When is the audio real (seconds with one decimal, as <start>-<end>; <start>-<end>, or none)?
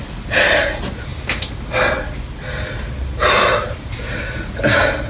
0.0-5.1